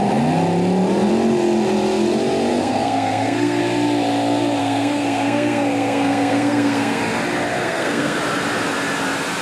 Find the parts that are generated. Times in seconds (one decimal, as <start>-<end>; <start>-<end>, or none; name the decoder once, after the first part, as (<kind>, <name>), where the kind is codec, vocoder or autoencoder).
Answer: 2.5-3.6 (codec, SNAC); 4.6-7.0; 7.6-8.2